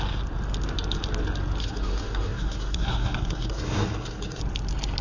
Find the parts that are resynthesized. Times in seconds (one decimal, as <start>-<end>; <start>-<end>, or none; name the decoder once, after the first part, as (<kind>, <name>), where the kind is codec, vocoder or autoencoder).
1.6-4.4 (codec, SNAC)